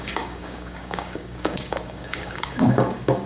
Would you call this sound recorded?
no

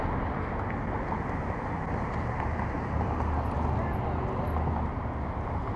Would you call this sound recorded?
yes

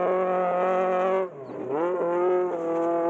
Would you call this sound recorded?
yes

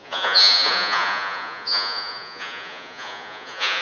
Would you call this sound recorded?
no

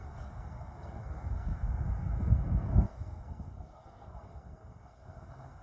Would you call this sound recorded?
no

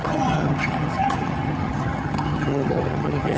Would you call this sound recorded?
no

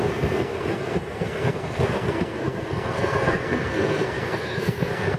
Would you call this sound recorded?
no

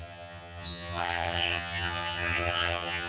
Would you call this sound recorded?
no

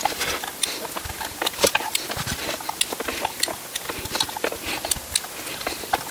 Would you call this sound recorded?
yes